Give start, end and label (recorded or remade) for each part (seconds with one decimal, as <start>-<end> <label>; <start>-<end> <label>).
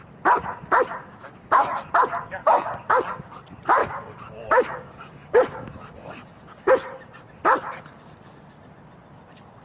0.0-1.0 recorded; 1.0-1.9 remade; 1.9-2.4 recorded; 2.4-3.1 remade; 3.1-3.8 recorded; 3.8-6.7 remade; 6.7-9.6 recorded